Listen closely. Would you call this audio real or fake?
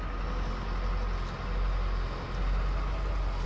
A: real